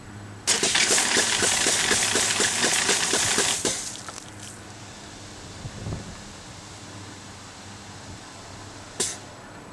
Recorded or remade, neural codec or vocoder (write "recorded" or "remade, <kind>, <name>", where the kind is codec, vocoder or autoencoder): recorded